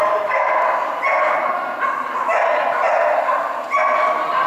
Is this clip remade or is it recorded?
recorded